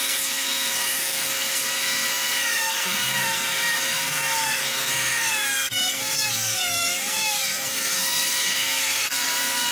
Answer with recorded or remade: remade